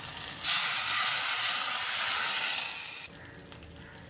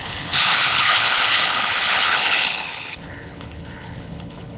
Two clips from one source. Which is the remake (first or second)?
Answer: second